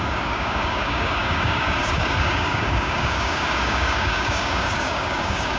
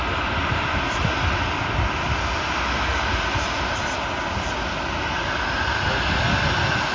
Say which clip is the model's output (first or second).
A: first